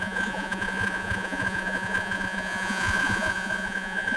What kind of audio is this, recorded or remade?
remade